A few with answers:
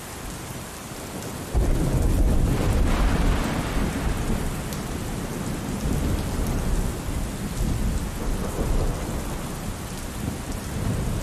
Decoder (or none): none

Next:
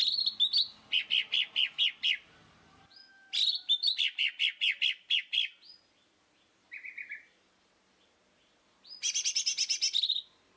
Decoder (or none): none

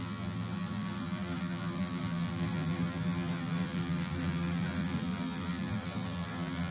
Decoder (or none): vocoder, BigVGAN v2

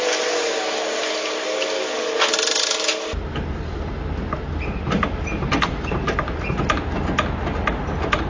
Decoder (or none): none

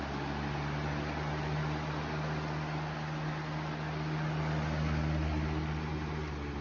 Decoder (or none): none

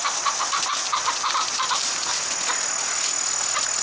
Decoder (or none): none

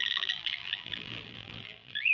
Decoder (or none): vocoder, BigVGAN v2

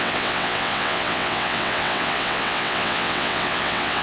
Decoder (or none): vocoder, WaveNeXt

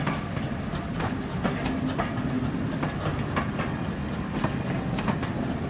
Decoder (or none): none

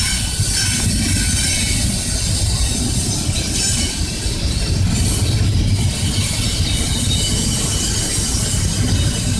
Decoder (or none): none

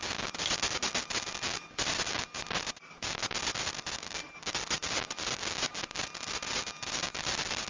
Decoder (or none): none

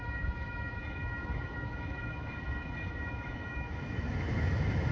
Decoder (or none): autoencoder, DAC-VAE